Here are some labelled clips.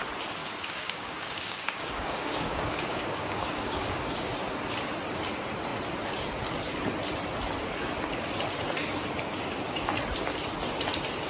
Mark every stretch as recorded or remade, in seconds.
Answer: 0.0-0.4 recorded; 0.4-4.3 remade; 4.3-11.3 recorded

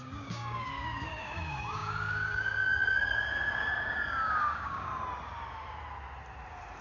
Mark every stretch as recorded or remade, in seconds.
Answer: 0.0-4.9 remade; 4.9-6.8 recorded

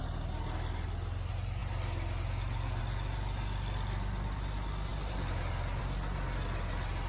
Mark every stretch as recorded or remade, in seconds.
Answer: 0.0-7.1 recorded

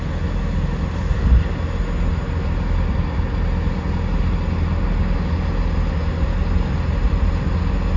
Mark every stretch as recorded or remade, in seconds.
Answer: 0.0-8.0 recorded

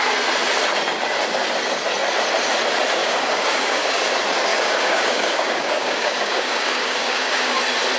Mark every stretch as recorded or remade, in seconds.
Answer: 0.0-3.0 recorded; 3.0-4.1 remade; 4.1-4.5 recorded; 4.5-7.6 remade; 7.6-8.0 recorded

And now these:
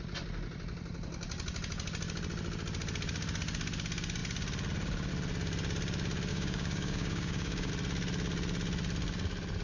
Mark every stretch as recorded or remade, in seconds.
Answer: 0.0-6.3 recorded; 6.3-7.7 remade; 7.7-9.6 recorded

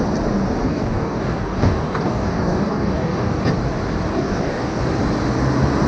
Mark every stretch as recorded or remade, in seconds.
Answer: 0.0-0.6 recorded; 0.6-3.4 remade; 3.4-4.1 recorded; 4.1-4.8 remade; 4.8-5.9 recorded